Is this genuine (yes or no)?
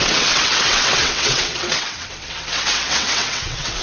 no